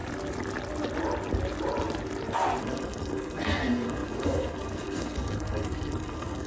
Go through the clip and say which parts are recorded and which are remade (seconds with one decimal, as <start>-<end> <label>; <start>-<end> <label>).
0.0-2.6 recorded; 2.6-6.5 remade